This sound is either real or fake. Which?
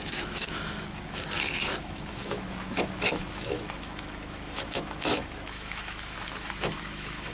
fake